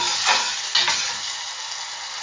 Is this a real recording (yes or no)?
yes